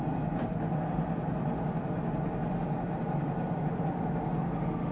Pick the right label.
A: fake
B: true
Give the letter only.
B